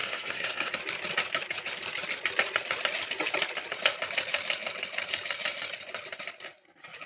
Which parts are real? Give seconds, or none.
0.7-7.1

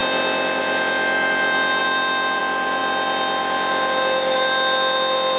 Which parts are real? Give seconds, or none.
0.0-5.4

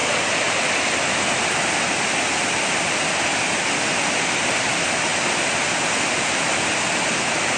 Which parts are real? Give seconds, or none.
0.0-7.6